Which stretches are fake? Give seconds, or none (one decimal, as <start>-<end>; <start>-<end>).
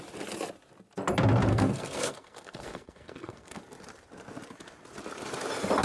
1.5-3.6